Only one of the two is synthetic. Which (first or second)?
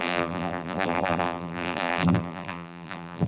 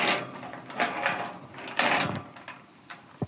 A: first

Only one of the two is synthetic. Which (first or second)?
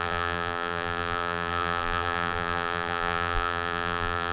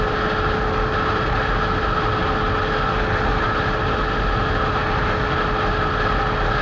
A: first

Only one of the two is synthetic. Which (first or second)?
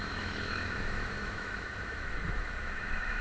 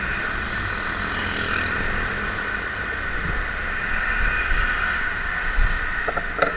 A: first